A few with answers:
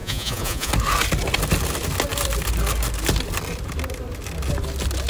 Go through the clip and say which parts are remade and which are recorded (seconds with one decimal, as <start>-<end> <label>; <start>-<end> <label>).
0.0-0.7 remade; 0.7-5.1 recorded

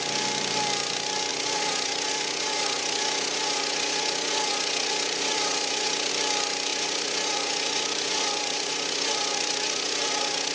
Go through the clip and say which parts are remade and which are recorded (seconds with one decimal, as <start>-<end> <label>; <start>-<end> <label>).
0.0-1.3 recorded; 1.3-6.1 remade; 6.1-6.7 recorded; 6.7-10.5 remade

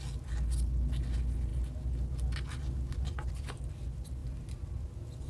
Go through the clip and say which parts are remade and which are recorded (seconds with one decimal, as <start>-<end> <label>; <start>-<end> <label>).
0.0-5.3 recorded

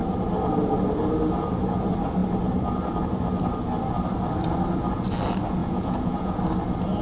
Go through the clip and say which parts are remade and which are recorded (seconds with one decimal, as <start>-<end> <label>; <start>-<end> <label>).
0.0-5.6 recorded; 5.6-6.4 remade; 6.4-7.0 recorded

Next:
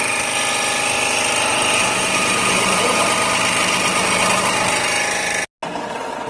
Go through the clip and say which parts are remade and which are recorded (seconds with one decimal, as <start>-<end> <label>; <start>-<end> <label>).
0.0-1.5 recorded; 1.5-3.0 remade; 3.0-6.3 recorded

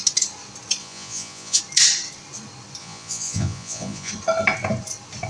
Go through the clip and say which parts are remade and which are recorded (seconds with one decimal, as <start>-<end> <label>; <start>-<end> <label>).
0.0-0.8 recorded; 0.8-1.6 remade; 1.6-2.8 recorded; 2.8-4.1 remade; 4.1-5.3 recorded